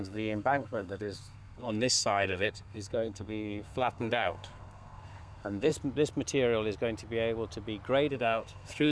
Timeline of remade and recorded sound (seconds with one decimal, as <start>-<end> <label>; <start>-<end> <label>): 0.0-5.7 remade; 5.7-8.1 recorded; 8.1-8.9 remade